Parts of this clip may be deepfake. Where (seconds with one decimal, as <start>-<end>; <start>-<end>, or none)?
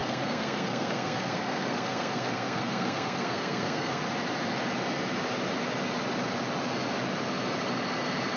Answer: 0.0-4.0